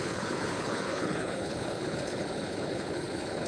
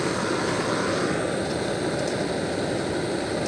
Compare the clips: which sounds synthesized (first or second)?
first